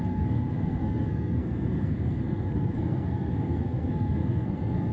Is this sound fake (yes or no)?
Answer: yes